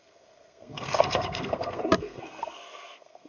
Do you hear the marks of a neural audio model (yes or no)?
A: yes